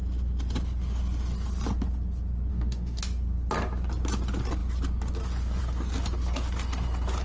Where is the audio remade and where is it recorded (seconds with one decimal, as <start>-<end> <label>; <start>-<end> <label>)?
0.0-2.5 recorded; 2.5-3.0 remade; 3.0-7.2 recorded